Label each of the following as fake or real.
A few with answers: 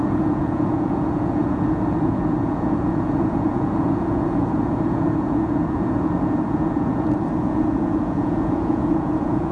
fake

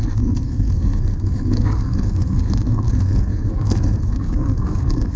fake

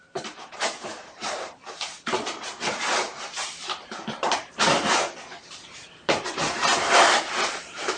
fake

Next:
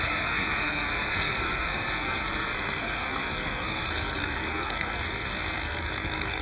fake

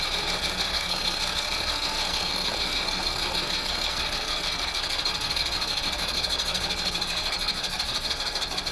fake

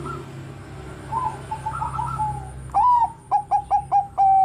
real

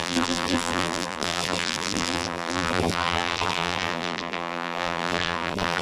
fake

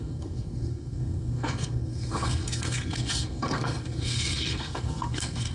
fake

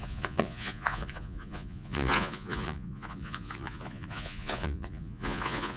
fake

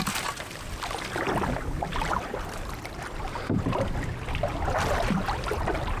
real